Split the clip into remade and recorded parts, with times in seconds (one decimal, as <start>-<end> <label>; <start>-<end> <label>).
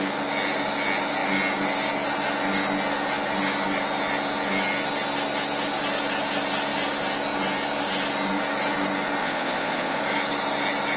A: 0.0-9.2 recorded; 9.2-10.0 remade; 10.0-11.0 recorded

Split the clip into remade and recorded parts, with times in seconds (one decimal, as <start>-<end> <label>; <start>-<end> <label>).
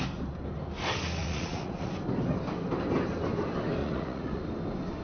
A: 0.0-1.2 recorded; 1.2-1.9 remade; 1.9-3.8 recorded; 3.8-4.4 remade; 4.4-5.0 recorded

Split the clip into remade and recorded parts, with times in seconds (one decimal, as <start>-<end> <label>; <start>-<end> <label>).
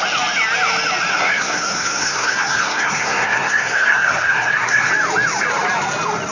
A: 0.0-1.1 recorded; 1.1-4.9 remade; 4.9-6.3 recorded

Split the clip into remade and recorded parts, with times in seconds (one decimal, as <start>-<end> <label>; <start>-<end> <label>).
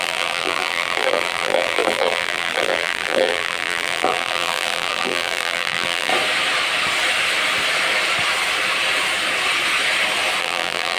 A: 0.0-6.1 remade; 6.1-10.4 recorded; 10.4-11.0 remade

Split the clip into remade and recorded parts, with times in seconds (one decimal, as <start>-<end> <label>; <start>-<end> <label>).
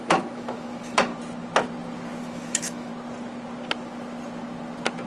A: 0.0-1.1 remade; 1.1-2.2 recorded; 2.2-2.9 remade; 2.9-5.1 recorded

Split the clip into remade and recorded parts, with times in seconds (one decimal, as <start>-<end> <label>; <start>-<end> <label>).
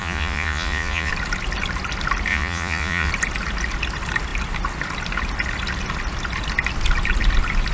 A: 0.0-1.1 remade; 1.1-2.3 recorded; 2.3-3.1 remade; 3.1-7.7 recorded